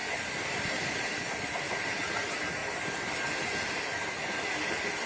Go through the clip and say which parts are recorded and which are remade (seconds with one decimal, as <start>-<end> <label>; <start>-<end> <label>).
0.0-2.0 remade; 2.0-2.6 recorded; 2.6-3.3 remade; 3.3-5.1 recorded